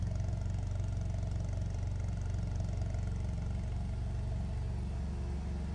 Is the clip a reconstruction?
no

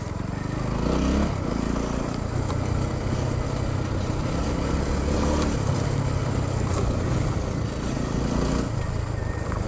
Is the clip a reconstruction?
no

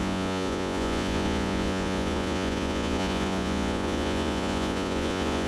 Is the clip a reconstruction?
yes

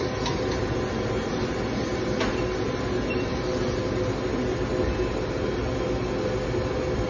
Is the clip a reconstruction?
no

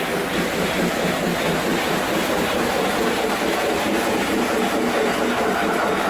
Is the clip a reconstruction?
no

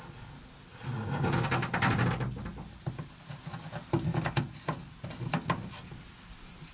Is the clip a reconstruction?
no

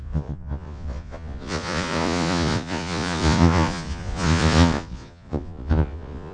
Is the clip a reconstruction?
yes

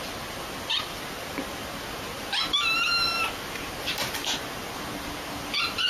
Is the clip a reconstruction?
no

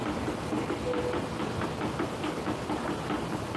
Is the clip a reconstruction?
no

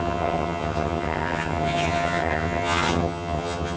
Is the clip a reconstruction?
yes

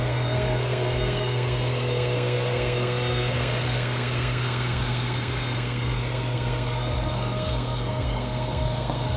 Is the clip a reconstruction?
yes